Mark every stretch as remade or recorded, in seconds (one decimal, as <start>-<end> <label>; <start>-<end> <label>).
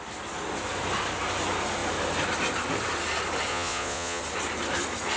0.0-3.5 recorded; 3.5-4.2 remade; 4.2-5.2 recorded